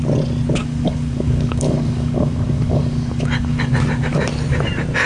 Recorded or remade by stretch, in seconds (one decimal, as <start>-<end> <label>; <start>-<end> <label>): 0.0-0.6 recorded; 0.6-3.7 remade; 3.7-5.1 recorded